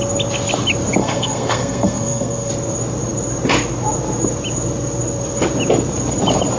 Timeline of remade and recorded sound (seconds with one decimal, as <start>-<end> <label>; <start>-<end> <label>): 0.0-1.0 recorded; 1.0-2.5 remade; 2.5-6.6 recorded